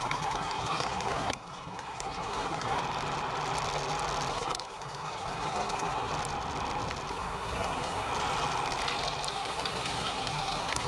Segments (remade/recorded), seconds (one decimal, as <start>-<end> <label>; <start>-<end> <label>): 0.0-2.8 remade; 2.8-4.3 recorded; 4.3-6.1 remade; 6.1-7.1 recorded; 7.1-8.1 remade; 8.1-9.3 recorded; 9.3-10.9 remade